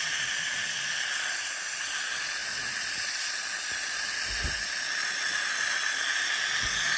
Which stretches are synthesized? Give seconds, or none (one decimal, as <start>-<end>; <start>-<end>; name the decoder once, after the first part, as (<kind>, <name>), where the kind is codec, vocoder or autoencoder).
none